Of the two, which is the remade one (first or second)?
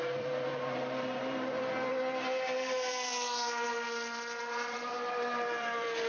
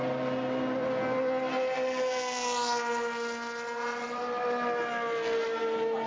first